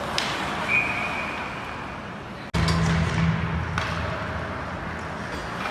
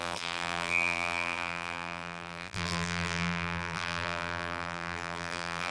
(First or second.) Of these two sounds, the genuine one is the first